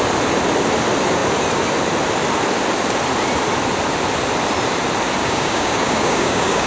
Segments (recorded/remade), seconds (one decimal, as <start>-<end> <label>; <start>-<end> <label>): 0.0-5.2 recorded; 5.2-6.7 remade